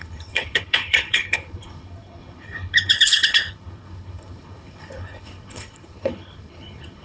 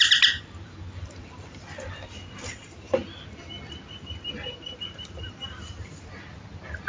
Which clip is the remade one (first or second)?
first